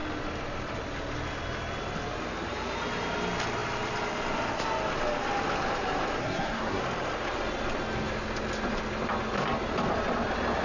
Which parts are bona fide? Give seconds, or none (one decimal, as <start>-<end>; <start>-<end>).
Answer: 0.0-6.2; 6.8-10.6